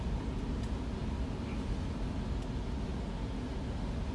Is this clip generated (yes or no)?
no